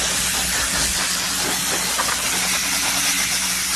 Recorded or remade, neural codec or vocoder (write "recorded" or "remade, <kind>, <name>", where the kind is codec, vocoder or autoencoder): recorded